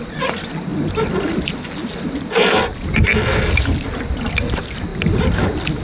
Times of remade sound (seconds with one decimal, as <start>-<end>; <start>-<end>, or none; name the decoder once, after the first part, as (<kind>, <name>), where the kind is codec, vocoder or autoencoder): none

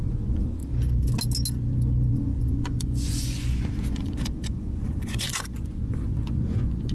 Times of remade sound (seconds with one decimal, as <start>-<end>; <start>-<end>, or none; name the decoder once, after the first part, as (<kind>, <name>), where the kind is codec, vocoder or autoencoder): 0.0-0.6 (vocoder, Vocos); 2.1-6.9

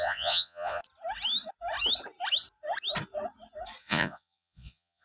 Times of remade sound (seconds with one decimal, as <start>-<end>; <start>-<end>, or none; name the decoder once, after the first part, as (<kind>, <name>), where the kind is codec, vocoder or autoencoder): 0.0-0.8 (vocoder, Vocos); 3.8-5.0

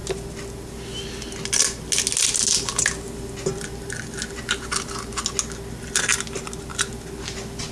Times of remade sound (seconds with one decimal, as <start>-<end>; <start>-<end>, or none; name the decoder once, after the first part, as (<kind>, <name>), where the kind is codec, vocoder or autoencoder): none

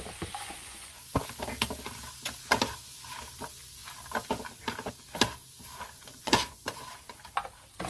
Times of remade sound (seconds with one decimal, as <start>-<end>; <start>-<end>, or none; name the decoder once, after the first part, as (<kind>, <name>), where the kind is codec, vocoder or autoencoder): 0.4-1.0 (vocoder, Vocos); 6.1-7.2

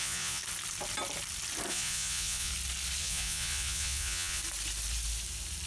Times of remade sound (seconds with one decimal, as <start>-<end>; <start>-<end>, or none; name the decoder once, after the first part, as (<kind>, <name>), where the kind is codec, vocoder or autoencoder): 0.0-0.4 (vocoder, Vocos); 1.7-2.5; 3.0-4.4

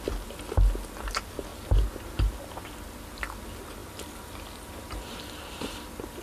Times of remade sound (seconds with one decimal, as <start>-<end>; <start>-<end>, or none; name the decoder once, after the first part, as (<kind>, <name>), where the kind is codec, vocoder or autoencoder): none

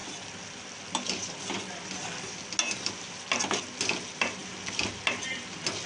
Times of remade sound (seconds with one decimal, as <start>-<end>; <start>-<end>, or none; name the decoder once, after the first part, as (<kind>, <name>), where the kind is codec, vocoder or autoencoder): none